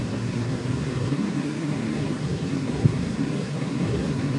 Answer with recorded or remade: remade